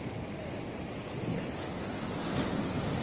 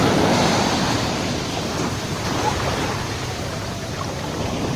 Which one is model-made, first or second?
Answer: second